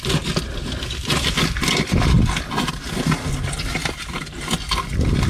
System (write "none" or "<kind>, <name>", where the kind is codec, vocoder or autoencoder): none